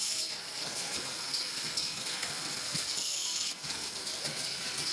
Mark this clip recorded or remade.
remade